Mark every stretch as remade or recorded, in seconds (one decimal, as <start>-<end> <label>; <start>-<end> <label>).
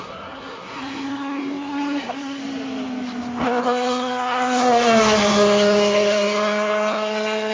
0.0-2.4 remade; 2.4-3.6 recorded; 3.6-7.5 remade